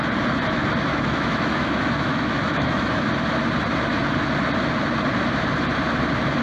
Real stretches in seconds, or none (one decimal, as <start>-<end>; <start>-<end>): 0.0-0.9; 3.1-6.4